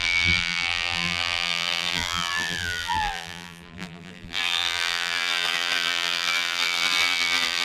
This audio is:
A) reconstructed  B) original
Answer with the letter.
A